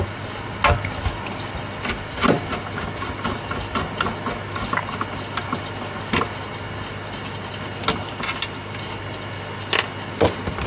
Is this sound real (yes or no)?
yes